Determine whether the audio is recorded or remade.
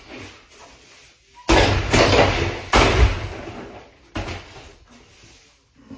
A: recorded